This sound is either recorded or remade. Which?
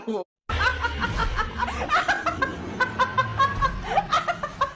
recorded